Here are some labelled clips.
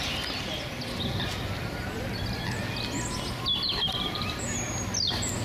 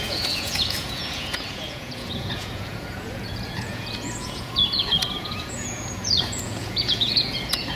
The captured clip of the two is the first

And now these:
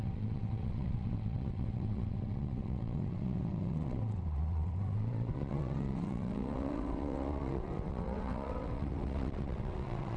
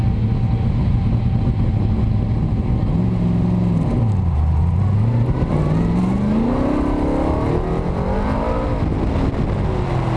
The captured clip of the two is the second